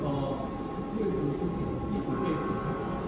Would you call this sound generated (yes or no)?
no